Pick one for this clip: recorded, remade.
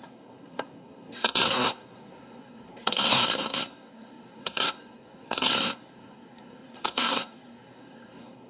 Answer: remade